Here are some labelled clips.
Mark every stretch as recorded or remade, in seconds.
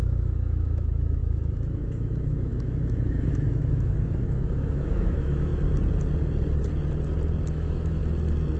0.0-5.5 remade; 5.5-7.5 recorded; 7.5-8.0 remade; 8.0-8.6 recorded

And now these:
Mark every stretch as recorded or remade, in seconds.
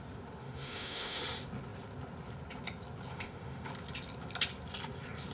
0.0-0.4 recorded; 0.4-1.2 remade; 1.2-3.1 recorded; 3.1-3.7 remade; 3.7-5.3 recorded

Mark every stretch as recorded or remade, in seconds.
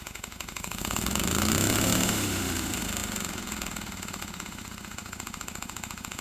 0.0-6.2 remade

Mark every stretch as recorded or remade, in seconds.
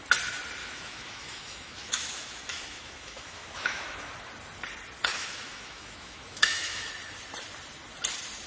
0.0-0.6 recorded; 0.6-4.1 remade; 4.1-5.1 recorded; 5.1-6.9 remade; 6.9-8.5 recorded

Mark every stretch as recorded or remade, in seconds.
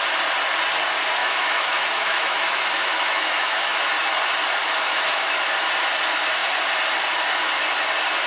0.0-1.2 recorded; 1.2-3.7 remade; 3.7-4.6 recorded; 4.6-5.4 remade; 5.4-8.3 recorded